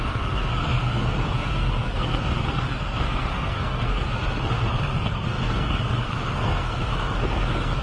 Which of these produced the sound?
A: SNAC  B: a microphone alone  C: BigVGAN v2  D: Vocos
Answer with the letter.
A